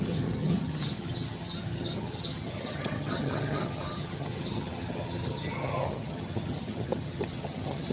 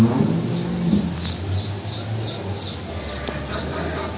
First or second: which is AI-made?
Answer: first